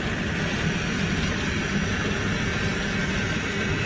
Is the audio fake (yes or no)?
no